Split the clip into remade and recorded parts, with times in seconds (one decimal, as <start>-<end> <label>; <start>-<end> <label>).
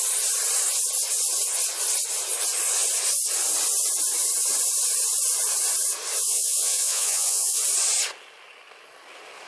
0.0-6.2 recorded; 6.2-7.6 remade; 7.6-9.5 recorded